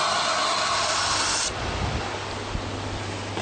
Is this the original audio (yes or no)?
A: yes